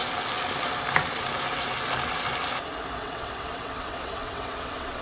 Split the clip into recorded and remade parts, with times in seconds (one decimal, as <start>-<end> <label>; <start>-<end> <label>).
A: 0.0-3.0 recorded; 3.0-5.0 remade